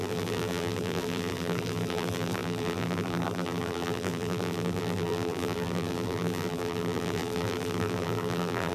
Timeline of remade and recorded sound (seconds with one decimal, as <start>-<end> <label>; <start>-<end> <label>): 0.0-8.7 remade